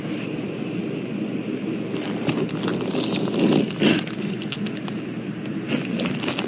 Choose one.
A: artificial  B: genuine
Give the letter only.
B